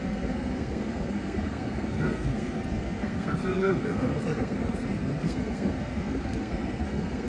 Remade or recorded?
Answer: remade